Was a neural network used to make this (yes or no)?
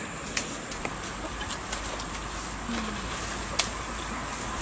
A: no